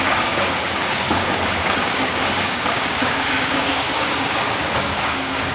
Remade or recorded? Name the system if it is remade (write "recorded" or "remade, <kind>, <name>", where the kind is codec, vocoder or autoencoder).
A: remade, codec, DAC